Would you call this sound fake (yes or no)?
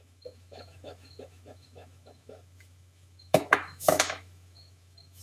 yes